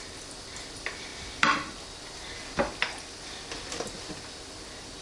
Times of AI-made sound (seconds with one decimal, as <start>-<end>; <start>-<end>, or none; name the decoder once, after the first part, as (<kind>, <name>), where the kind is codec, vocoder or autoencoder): none